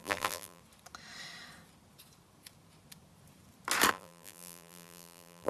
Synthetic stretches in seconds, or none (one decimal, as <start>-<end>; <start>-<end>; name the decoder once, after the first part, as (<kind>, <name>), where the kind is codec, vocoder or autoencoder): 0.0-0.6 (vocoder, BigVGAN v2); 3.9-5.5

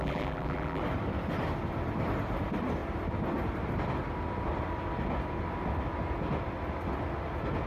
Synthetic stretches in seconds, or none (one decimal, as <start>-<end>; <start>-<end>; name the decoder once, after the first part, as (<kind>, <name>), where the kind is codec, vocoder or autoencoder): 0.0-0.8 (vocoder, BigVGAN v2)

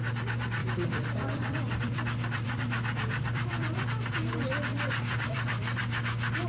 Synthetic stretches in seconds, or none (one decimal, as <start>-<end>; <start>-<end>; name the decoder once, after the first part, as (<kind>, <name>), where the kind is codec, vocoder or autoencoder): 0.6-4.5 (vocoder, BigVGAN v2); 5.1-5.8